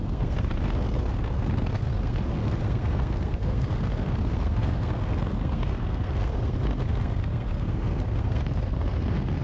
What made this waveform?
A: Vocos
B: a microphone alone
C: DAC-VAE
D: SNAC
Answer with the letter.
D